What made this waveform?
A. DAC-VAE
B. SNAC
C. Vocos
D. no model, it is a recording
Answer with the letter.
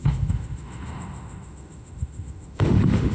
A